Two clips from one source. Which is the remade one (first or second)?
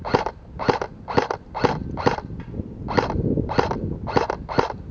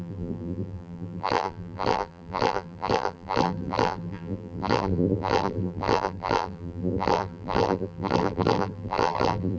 second